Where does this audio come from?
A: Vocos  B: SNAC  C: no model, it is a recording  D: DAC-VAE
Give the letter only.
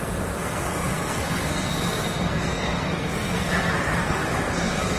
B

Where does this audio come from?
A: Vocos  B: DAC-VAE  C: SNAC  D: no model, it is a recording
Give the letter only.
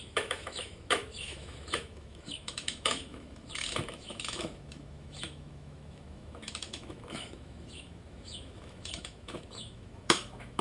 B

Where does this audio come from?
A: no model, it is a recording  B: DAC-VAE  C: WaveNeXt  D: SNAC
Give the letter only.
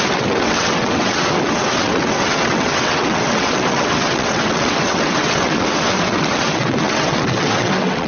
C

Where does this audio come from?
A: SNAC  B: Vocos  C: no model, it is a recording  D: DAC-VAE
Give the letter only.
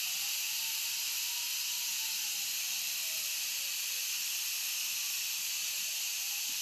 C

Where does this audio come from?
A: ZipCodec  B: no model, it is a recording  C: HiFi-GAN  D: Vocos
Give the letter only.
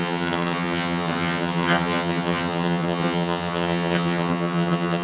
C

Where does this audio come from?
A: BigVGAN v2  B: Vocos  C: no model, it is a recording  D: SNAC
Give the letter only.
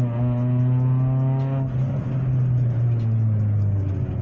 C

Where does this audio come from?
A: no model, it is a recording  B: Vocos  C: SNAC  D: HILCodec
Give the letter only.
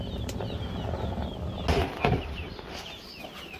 A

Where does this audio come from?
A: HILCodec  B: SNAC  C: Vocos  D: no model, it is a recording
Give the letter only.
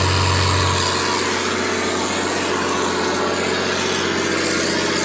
D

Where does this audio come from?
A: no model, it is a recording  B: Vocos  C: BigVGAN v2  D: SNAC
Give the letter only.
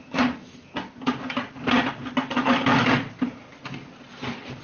A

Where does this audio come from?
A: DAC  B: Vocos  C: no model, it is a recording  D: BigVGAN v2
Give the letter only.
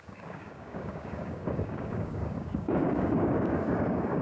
A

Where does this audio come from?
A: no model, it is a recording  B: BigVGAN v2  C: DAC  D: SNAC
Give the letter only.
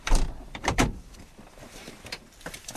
B